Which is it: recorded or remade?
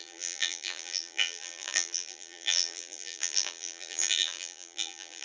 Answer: remade